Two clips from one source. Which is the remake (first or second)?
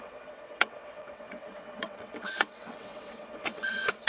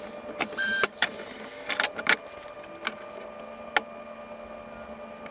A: first